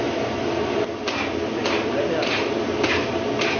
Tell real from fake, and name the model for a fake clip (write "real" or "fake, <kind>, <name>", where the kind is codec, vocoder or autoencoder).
real